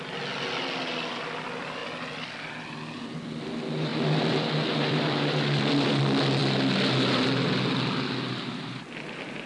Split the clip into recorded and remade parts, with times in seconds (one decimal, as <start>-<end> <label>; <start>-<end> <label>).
0.0-3.9 recorded; 3.9-6.0 remade; 6.0-9.5 recorded